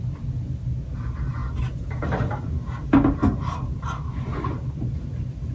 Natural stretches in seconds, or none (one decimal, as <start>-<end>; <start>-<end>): 0.0-1.4; 2.5-3.2; 4.8-5.5